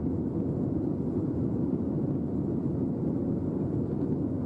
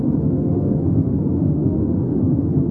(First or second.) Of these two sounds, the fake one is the second